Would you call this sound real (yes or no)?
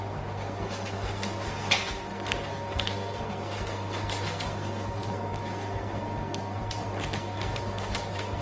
no